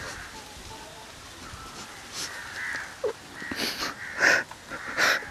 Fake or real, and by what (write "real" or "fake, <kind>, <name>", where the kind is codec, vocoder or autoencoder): real